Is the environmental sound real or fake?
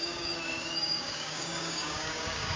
fake